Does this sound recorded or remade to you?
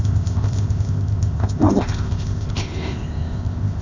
remade